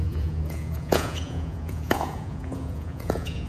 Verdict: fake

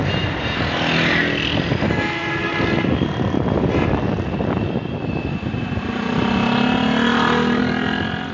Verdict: real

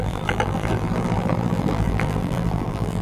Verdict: fake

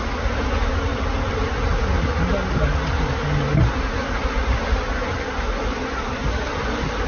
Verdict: real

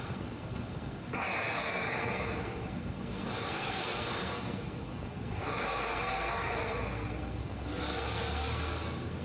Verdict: fake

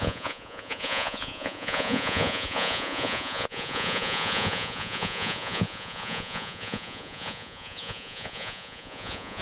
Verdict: fake